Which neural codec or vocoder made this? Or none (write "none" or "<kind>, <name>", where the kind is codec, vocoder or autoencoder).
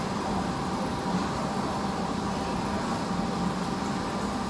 none